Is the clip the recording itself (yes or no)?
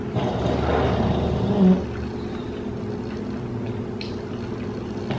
yes